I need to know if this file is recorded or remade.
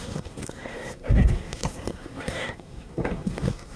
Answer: remade